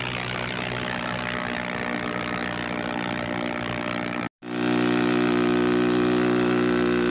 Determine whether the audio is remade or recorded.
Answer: recorded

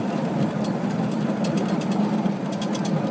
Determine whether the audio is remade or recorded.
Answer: recorded